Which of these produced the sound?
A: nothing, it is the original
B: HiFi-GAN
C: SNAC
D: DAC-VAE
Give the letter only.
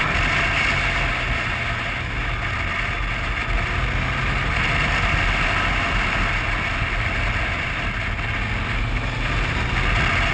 A